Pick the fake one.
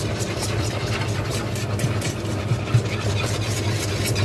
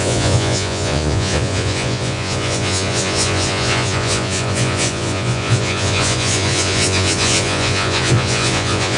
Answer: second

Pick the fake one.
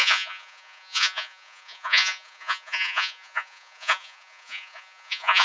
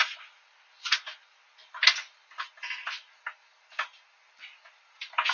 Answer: first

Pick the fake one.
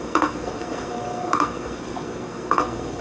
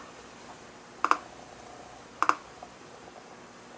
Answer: first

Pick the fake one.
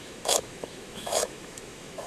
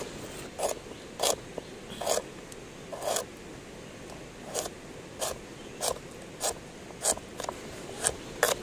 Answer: first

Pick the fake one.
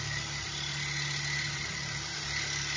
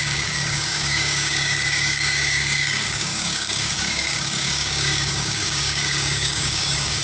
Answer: second